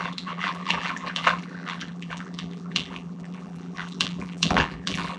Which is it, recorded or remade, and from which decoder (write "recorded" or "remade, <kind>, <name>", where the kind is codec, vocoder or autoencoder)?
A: remade, vocoder, BigVGAN v2